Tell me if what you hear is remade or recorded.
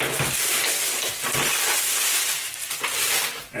recorded